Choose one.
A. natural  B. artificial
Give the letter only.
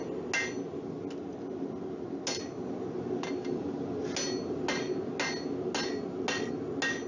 A